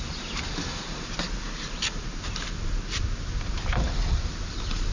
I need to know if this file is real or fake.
real